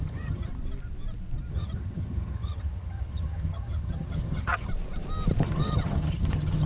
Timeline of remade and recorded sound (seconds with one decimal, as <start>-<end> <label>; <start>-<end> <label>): 0.0-0.5 remade; 0.5-1.5 recorded; 1.5-4.7 remade; 4.7-5.4 recorded; 5.4-6.7 remade